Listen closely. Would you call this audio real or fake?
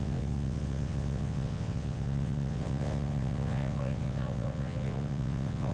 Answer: fake